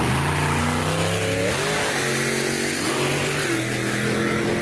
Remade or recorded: recorded